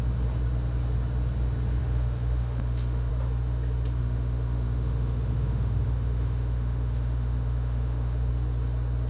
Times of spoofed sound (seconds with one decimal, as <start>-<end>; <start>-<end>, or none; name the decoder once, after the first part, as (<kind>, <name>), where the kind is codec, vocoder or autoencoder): 1.8-3.1 (autoencoder, DAC-VAE); 4.0-8.3